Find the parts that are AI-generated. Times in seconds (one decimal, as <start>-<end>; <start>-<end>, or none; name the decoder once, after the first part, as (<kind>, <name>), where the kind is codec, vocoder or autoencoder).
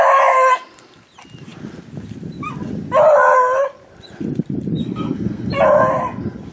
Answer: 4.8-5.5 (codec, SNAC)